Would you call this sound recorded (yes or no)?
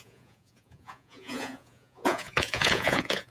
no